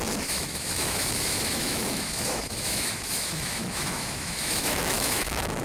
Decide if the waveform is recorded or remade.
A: remade